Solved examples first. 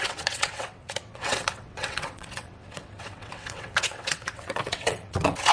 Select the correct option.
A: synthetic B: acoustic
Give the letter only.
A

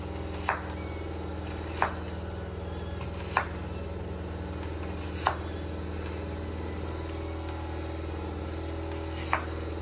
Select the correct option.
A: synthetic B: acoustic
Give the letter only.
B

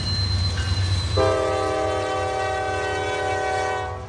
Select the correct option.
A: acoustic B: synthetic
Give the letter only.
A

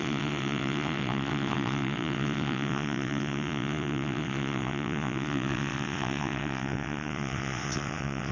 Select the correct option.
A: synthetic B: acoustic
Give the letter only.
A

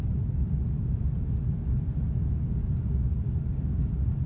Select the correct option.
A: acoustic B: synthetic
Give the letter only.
A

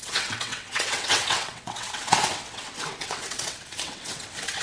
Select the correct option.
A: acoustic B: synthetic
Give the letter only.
B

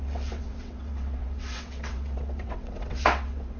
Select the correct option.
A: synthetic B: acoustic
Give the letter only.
A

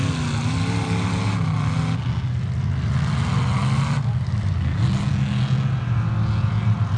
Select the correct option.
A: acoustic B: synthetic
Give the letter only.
A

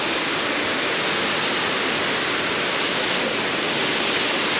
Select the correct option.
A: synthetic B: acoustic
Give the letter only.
B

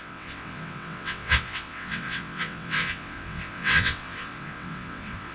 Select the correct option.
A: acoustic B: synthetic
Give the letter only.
B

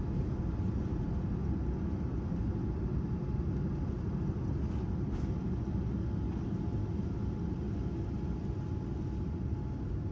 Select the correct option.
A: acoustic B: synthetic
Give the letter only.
A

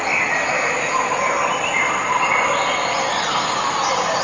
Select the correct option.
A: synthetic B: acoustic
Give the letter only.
B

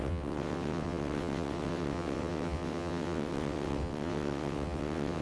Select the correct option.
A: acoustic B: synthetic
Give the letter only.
B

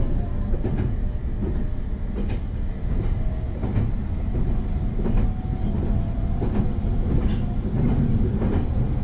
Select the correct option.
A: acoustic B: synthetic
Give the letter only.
A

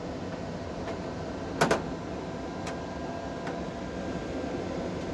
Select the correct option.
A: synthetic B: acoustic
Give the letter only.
B